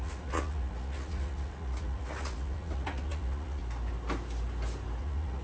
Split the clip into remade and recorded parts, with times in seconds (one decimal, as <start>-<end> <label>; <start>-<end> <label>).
0.0-3.6 remade; 3.6-5.0 recorded; 5.0-5.4 remade